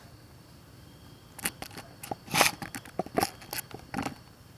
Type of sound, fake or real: real